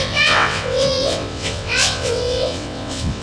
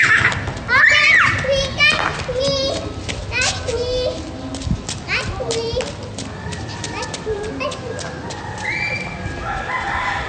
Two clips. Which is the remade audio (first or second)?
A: first